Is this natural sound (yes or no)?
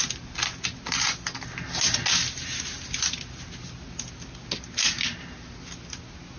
yes